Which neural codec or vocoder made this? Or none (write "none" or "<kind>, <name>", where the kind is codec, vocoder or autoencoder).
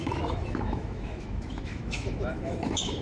autoencoder, DAC-VAE